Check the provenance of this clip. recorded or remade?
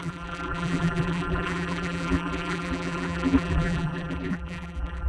remade